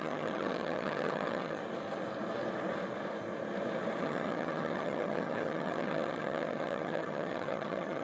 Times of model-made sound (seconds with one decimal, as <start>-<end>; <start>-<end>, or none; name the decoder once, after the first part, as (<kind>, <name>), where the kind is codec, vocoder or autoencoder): 0.0-1.6 (vocoder, HiFi-GAN); 4.0-8.0